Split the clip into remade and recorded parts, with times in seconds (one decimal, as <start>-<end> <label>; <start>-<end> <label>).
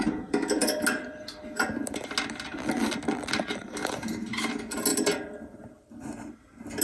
0.0-4.9 recorded; 4.9-5.8 remade; 5.8-6.8 recorded